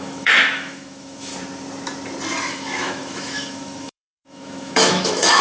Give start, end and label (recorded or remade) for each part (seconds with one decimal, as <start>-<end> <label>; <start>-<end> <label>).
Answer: 0.0-1.3 remade; 1.3-2.4 recorded; 2.4-5.4 remade